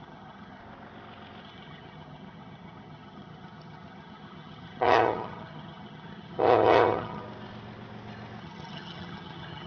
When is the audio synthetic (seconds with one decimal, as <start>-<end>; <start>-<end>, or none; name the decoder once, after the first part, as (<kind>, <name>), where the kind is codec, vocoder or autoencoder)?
0.0-0.6 (vocoder, HiFi-GAN); 1.4-7.2; 8.4-9.7

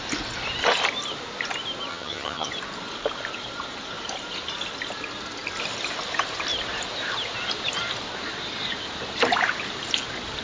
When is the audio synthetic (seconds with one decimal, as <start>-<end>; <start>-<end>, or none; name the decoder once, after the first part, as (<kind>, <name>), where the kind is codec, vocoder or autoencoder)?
1.9-2.5 (vocoder, HiFi-GAN)

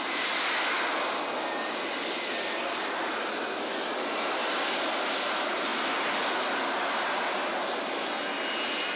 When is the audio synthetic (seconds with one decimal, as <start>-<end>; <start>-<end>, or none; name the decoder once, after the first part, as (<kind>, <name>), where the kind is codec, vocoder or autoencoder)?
none

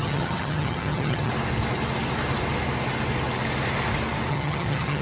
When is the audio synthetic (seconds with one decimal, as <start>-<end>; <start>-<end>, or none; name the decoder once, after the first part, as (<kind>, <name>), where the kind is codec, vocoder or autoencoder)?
0.0-1.3 (vocoder, HiFi-GAN); 4.3-5.0

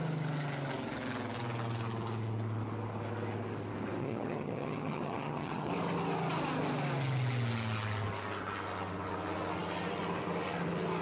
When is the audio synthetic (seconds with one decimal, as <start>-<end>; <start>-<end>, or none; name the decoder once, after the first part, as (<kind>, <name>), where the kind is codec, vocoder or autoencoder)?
4.0-5.7 (vocoder, HiFi-GAN)

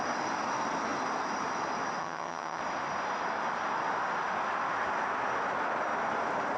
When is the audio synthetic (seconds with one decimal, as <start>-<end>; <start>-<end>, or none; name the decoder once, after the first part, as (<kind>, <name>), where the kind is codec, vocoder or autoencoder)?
2.0-2.6 (vocoder, HiFi-GAN)

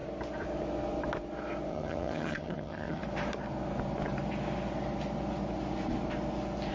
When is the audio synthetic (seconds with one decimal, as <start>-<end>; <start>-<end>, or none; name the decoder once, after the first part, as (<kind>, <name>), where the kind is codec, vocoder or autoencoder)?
1.7-3.0 (vocoder, HiFi-GAN)